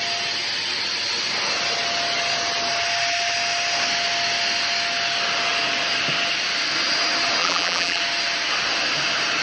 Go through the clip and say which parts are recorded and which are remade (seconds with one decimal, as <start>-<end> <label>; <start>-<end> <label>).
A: 0.0-7.4 recorded; 7.4-8.0 remade; 8.0-9.4 recorded